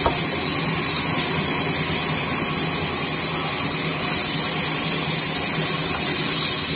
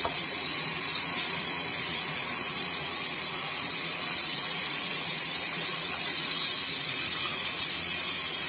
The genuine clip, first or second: first